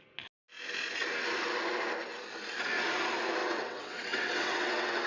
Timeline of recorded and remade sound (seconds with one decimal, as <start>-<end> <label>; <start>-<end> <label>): 0.0-3.4 recorded; 3.4-5.1 remade

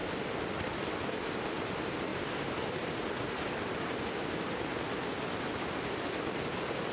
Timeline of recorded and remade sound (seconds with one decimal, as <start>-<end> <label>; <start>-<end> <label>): 0.0-6.9 recorded

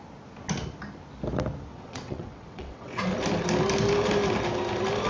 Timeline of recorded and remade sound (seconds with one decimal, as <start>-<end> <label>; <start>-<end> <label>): 0.0-1.7 recorded; 1.7-3.0 remade; 3.0-5.1 recorded

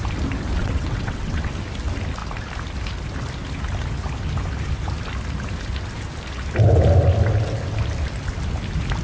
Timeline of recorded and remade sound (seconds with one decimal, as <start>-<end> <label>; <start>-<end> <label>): 0.0-0.6 recorded; 0.6-1.5 remade; 1.5-9.0 recorded

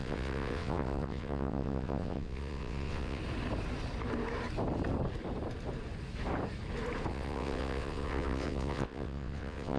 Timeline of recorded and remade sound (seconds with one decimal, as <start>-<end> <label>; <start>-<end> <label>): 0.0-3.2 remade; 3.2-7.1 recorded; 7.1-9.8 remade

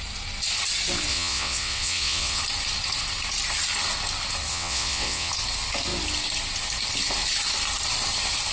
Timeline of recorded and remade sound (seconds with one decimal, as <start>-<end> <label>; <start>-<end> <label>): 0.0-1.1 recorded; 1.1-2.4 remade; 2.4-4.5 recorded; 4.5-5.3 remade; 5.3-8.5 recorded